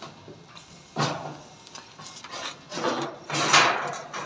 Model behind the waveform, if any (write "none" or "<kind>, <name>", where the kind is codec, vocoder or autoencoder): none